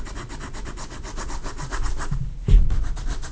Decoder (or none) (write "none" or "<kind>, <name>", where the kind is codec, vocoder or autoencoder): none